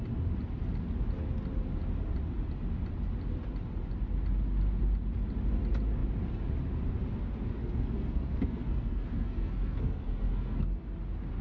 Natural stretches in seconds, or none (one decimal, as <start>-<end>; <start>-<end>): 0.0-7.6; 10.6-11.4